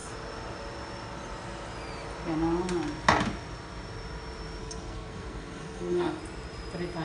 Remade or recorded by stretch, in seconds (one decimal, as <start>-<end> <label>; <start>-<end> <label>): 0.0-4.6 recorded; 4.6-6.2 remade; 6.2-7.0 recorded